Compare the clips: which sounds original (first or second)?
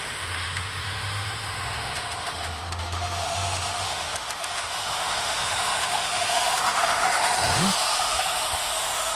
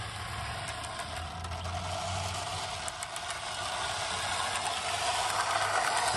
second